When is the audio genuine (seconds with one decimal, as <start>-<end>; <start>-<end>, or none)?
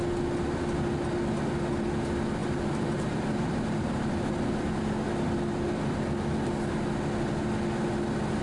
0.0-2.4; 4.3-8.4